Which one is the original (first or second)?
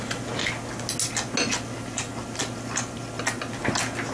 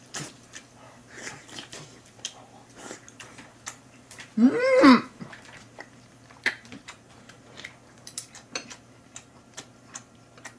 first